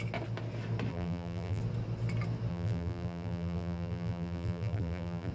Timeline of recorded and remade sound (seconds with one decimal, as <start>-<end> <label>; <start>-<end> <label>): 0.0-0.9 recorded; 0.9-1.6 remade; 1.6-2.5 recorded; 2.5-5.3 remade